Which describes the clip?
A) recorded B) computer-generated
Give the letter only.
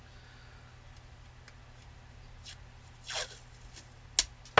A